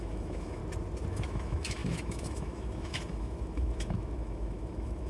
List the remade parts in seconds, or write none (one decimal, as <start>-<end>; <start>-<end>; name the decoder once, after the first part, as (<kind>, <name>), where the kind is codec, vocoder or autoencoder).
0.0-0.6 (autoencoder, DAC-VAE); 1.1-5.1

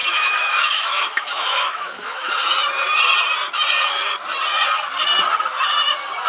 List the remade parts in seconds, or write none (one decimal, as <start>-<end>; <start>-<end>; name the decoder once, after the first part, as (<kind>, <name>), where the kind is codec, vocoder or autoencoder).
0.0-2.3 (autoencoder, DAC-VAE)

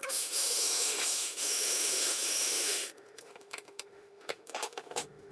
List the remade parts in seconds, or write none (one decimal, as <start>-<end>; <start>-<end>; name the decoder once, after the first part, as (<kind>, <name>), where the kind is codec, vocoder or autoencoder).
0.0-5.3 (autoencoder, DAC-VAE)

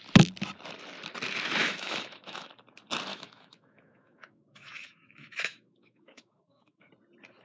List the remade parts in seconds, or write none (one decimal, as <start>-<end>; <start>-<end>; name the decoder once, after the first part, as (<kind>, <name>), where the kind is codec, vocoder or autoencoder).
1.6-2.5 (autoencoder, DAC-VAE); 3.1-6.9

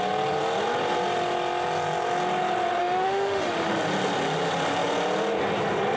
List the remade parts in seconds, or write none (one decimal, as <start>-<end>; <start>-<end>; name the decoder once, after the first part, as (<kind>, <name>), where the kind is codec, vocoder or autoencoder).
2.8-3.7 (autoencoder, DAC-VAE)

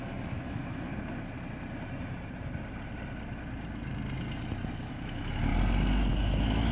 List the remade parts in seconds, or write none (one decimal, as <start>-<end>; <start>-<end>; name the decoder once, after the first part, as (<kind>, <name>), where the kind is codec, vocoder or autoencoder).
0.0-0.9 (autoencoder, DAC-VAE); 4.9-5.5; 6.1-6.7

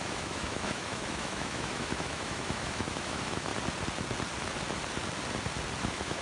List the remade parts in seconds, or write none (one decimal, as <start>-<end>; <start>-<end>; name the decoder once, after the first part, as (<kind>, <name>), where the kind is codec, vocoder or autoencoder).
0.0-3.5 (autoencoder, DAC-VAE); 5.8-6.2

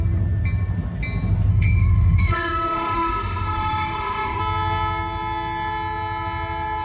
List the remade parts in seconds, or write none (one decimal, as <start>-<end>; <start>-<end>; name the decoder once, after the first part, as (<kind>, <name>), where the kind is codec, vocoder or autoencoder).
1.5-4.4 (autoencoder, DAC-VAE)